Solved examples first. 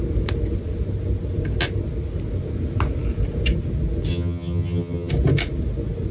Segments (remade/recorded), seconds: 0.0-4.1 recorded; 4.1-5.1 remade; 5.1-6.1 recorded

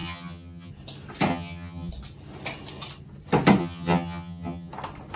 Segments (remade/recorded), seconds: 0.0-0.7 remade; 0.7-1.3 recorded; 1.3-1.9 remade; 1.9-3.6 recorded; 3.6-4.7 remade; 4.7-5.2 recorded

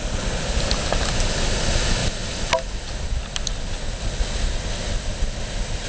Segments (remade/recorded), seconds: 0.0-5.9 recorded

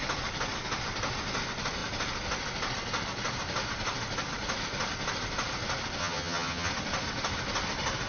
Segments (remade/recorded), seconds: 0.0-6.0 recorded; 6.0-6.7 remade; 6.7-8.1 recorded